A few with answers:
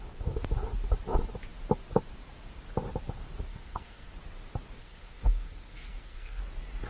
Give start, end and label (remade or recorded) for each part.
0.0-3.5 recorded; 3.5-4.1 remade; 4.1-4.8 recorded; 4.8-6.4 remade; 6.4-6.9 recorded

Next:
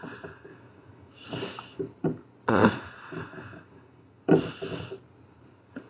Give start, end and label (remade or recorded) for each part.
0.0-0.5 recorded; 0.5-1.8 remade; 1.8-2.6 recorded; 2.6-4.2 remade; 4.2-5.9 recorded

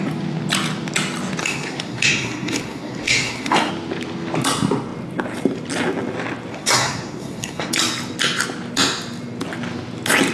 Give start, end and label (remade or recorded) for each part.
0.0-1.4 recorded; 1.4-3.7 remade; 3.7-6.5 recorded; 6.5-7.7 remade; 7.7-10.3 recorded

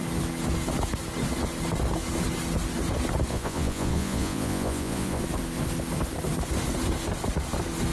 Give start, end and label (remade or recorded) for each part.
0.0-3.3 recorded; 3.3-5.2 remade; 5.2-7.9 recorded

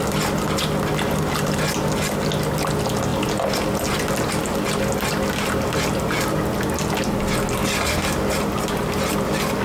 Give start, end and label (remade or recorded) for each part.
0.0-9.6 recorded